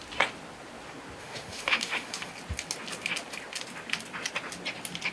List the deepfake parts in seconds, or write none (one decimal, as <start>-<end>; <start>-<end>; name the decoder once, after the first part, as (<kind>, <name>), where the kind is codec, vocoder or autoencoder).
1.2-2.3 (autoencoder, DAC-VAE)